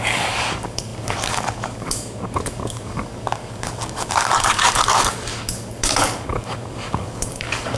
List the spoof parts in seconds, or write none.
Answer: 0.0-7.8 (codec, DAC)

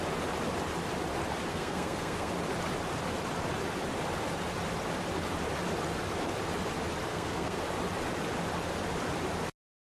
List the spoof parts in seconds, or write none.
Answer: 1.5-2.3 (codec, SNAC); 7.1-7.6